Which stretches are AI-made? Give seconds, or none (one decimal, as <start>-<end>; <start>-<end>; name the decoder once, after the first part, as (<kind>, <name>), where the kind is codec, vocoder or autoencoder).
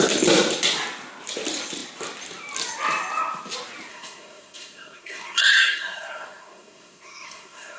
3.9-7.8 (codec, SNAC)